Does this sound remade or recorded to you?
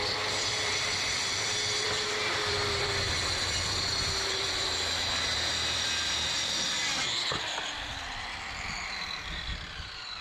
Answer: remade